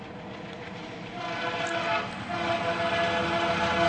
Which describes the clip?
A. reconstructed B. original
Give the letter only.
B